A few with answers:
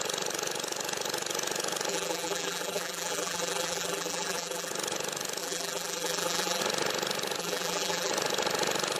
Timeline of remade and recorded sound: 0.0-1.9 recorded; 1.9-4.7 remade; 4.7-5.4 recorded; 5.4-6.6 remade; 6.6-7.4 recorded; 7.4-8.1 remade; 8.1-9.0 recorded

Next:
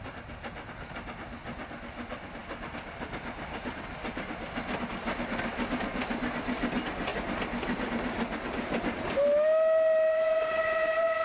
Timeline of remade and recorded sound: 0.0-11.2 recorded

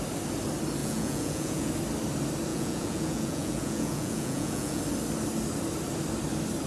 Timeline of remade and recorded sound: 0.0-0.8 recorded; 0.8-1.7 remade; 1.7-2.5 recorded; 2.5-4.8 remade; 4.8-6.7 recorded

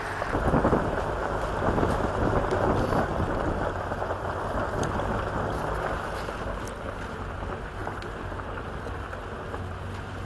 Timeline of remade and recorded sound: 0.0-10.3 recorded

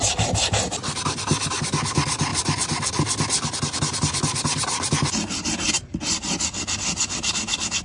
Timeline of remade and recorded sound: 0.0-7.8 recorded

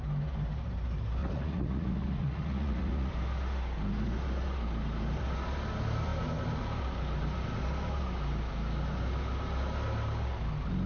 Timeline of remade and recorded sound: 0.0-1.2 recorded; 1.2-3.1 remade; 3.1-10.9 recorded